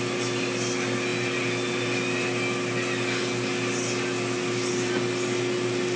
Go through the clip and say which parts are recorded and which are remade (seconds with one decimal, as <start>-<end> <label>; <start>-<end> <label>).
0.0-6.0 recorded